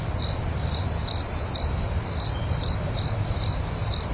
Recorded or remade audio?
remade